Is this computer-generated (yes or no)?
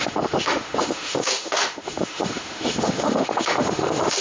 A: yes